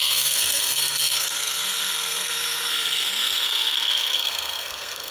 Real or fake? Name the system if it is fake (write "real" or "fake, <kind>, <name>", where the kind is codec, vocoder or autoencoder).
fake, codec, SNAC